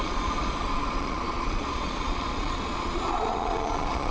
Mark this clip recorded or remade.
remade